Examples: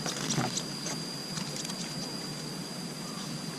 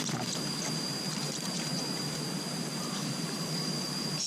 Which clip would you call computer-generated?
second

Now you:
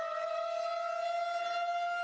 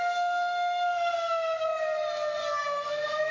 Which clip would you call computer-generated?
second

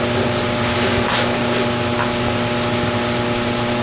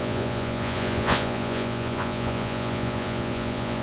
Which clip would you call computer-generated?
second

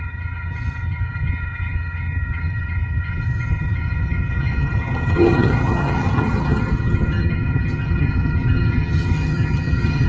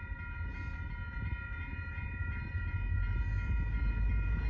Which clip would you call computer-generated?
first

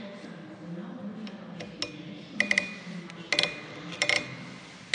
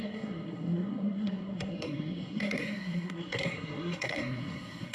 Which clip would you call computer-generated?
second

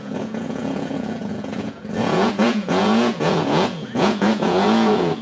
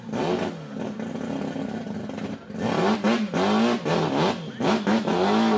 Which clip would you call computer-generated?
first